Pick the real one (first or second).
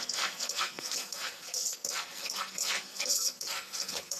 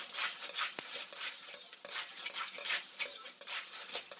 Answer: second